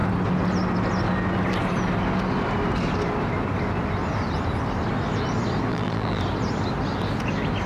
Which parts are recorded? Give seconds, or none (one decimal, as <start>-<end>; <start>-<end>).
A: 0.0-5.7; 6.2-7.7

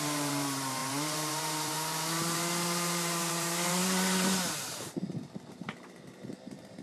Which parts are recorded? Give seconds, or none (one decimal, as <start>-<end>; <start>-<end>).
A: none

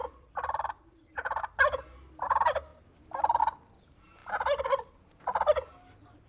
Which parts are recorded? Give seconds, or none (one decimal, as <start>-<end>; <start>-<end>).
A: 1.4-2.7; 3.4-6.3

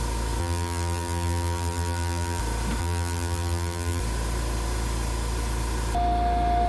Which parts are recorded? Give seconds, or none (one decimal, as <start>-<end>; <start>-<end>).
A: 0.0-0.4; 2.4-2.8; 4.0-6.7

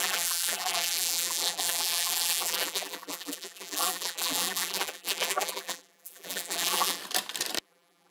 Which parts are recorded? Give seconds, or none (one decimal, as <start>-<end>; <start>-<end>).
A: 7.0-7.6